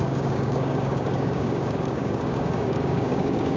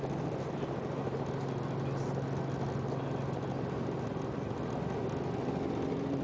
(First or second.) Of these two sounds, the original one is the second